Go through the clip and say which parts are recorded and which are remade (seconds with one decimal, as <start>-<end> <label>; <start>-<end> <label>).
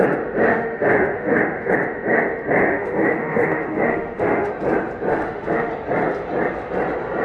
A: 0.0-0.5 recorded; 0.5-1.7 remade; 1.7-2.6 recorded; 2.6-4.5 remade; 4.5-5.1 recorded; 5.1-5.7 remade; 5.7-7.2 recorded